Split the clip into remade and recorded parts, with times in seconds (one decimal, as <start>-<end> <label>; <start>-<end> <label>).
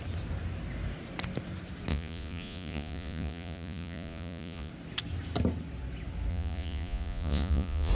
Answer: 0.0-1.9 recorded; 1.9-4.7 remade; 4.7-6.3 recorded; 6.3-7.9 remade